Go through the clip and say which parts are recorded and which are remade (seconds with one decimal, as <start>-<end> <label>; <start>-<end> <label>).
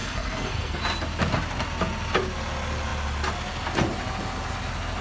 0.0-0.8 remade; 0.8-5.0 recorded